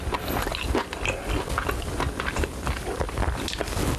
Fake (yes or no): no